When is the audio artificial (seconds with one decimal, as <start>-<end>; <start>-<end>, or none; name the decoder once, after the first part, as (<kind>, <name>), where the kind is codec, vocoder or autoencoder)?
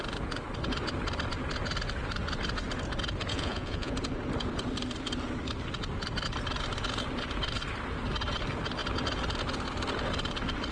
3.3-3.9 (vocoder, Vocos)